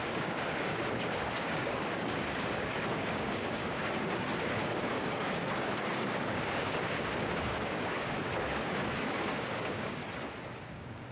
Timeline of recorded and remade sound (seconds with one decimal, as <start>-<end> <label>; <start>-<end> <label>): 0.0-10.0 remade; 10.0-10.5 recorded; 10.5-11.1 remade